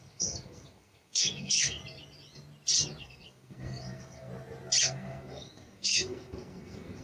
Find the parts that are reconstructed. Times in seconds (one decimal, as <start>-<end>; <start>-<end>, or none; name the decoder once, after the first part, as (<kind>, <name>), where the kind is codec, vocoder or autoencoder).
0.0-1.8 (codec, SNAC); 3.0-4.3; 4.8-7.0

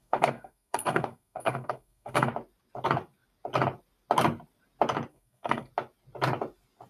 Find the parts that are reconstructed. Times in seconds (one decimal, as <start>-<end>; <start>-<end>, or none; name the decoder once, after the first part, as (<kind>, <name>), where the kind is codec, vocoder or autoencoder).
0.0-2.3 (codec, SNAC); 5.1-5.7

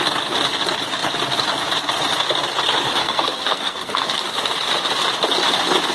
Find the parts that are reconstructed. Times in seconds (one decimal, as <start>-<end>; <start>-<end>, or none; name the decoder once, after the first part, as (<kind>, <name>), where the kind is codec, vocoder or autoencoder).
3.0-4.2 (codec, SNAC)

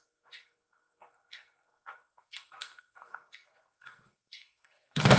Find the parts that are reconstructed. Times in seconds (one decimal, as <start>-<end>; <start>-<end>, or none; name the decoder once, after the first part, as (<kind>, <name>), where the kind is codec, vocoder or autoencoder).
0.0-5.2 (codec, SNAC)

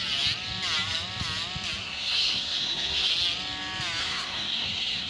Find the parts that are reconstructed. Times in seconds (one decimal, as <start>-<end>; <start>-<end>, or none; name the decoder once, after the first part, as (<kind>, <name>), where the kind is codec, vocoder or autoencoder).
1.8-3.1 (codec, SNAC); 4.0-5.1

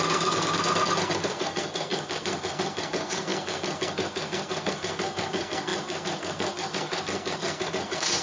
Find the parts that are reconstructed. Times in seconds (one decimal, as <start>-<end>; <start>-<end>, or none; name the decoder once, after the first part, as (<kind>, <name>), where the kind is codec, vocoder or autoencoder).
0.0-8.2 (codec, SNAC)